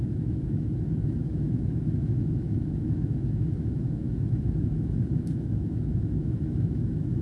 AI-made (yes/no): yes